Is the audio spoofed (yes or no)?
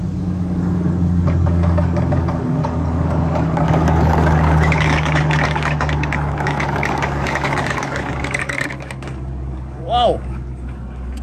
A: yes